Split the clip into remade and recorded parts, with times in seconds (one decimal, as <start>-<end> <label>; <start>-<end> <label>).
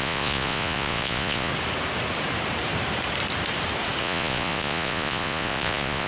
0.0-1.5 remade; 1.5-4.0 recorded; 4.0-6.1 remade